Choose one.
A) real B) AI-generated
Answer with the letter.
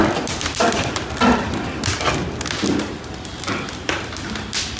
A